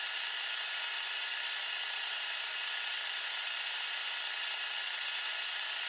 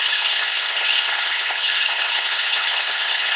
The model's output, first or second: second